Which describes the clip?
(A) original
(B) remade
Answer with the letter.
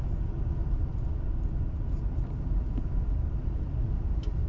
A